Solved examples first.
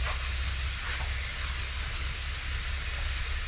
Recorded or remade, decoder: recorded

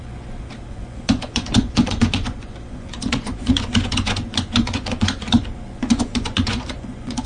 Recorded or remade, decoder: remade, vocoder, Vocos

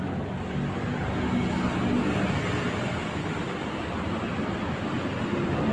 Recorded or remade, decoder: recorded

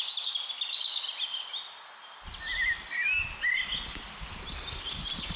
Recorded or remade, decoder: recorded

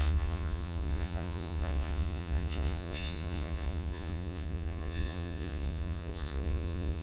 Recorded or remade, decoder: remade, vocoder, Vocos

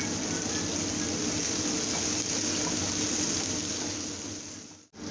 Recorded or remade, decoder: recorded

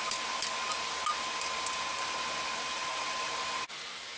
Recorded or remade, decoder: recorded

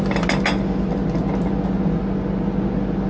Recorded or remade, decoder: recorded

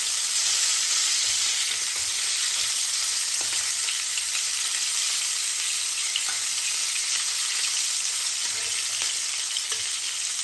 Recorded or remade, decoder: recorded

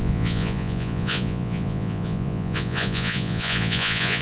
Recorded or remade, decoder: remade, vocoder, Vocos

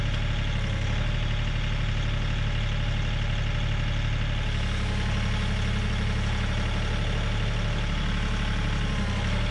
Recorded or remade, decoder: recorded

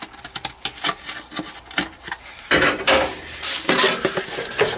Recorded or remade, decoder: recorded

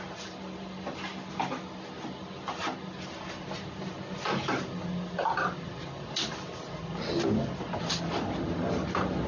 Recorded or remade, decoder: recorded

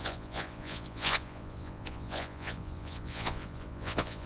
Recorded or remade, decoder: remade, vocoder, Vocos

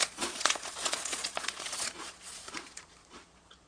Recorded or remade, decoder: remade, vocoder, Vocos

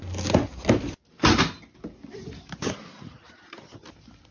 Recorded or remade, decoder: recorded